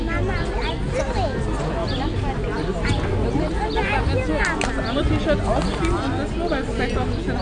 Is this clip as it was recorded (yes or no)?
yes